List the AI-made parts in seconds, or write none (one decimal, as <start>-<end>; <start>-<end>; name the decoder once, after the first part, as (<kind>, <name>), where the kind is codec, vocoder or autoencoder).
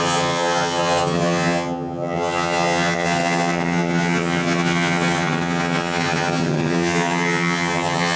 0.0-8.2 (vocoder, HiFi-GAN)